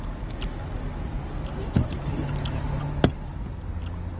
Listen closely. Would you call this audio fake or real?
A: real